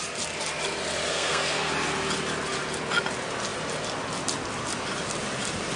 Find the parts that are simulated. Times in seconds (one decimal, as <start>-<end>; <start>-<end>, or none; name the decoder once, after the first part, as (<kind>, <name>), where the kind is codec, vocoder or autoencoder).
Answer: 1.1-1.7 (codec, SNAC)